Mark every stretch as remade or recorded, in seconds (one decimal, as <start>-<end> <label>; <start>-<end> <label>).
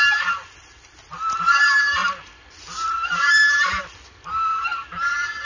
0.0-5.4 recorded